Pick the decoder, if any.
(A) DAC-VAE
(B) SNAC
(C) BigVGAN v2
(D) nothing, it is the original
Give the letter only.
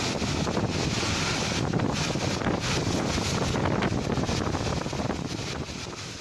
D